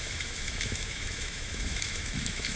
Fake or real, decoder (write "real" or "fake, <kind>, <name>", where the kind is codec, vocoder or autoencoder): fake, autoencoder, DAC-VAE